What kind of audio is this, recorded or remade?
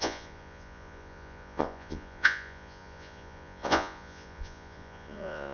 remade